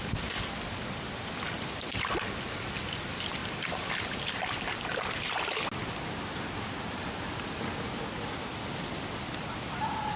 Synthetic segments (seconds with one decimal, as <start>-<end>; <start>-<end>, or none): none